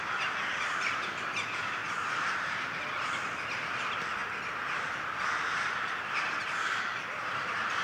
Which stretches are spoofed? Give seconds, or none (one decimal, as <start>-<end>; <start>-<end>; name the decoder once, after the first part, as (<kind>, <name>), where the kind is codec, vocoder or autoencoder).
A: 1.8-2.8 (vocoder, BigVGAN v2)